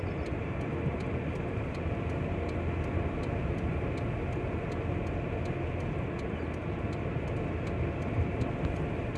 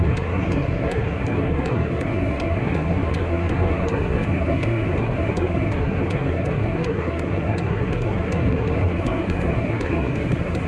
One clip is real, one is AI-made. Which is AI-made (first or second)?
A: second